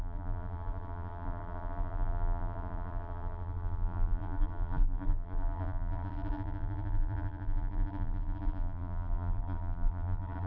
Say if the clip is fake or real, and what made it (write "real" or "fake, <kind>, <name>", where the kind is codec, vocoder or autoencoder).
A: fake, vocoder, BigVGAN v2